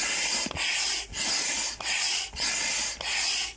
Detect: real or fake real